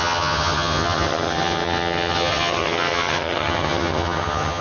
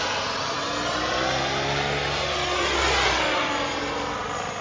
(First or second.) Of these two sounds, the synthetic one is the first